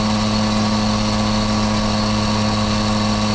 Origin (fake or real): real